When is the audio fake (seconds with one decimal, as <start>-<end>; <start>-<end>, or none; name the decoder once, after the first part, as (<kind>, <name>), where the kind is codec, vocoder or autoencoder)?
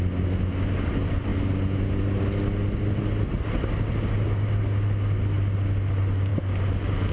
none